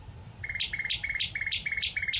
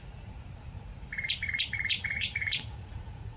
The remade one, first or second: second